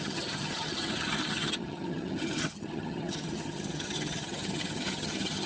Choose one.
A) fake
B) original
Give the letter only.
A